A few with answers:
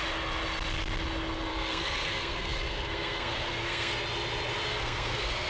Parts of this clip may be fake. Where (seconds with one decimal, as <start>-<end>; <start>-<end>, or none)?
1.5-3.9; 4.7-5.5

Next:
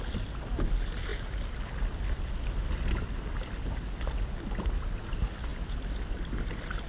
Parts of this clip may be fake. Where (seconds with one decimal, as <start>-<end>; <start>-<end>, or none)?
none

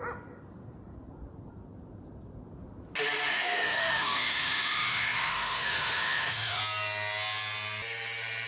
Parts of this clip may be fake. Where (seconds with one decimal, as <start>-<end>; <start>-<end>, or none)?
3.3-6.6

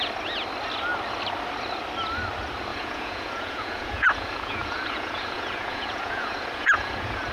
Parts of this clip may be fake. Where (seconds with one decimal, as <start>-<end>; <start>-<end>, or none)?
2.7-7.3

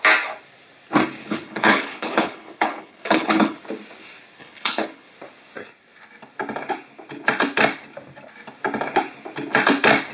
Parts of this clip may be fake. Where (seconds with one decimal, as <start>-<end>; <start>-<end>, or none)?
1.2-3.6; 4.4-5.1